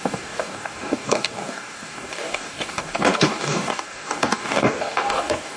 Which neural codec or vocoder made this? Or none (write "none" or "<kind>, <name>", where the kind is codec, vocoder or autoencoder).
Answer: codec, DAC